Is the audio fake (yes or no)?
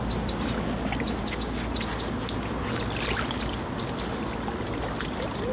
no